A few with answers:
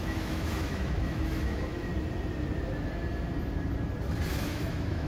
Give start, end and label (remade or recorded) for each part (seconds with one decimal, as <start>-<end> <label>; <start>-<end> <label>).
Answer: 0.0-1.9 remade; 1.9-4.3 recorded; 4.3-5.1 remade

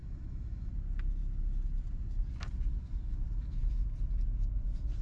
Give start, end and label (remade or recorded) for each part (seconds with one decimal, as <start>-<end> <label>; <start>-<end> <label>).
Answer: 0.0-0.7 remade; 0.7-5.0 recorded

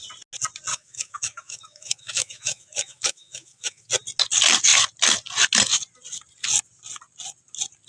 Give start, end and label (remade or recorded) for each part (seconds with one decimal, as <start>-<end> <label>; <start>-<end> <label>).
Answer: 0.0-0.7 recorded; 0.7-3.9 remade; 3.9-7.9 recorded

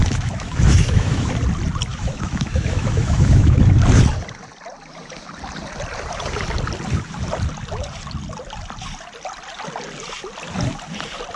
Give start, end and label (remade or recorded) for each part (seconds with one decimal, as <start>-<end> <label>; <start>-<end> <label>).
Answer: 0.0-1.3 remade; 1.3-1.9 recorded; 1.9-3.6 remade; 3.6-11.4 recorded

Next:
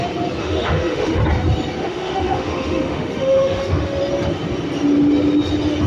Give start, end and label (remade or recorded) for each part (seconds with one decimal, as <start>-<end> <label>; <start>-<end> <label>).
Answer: 0.0-0.4 recorded; 0.4-1.2 remade; 1.2-1.8 recorded; 1.8-4.0 remade; 4.0-5.9 recorded